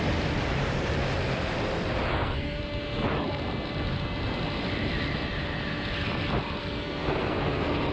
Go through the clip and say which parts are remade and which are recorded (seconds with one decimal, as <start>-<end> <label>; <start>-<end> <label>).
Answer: 0.0-2.1 recorded; 2.1-2.6 remade; 2.6-6.6 recorded; 6.6-7.9 remade